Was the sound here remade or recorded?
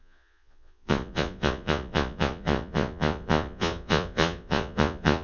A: remade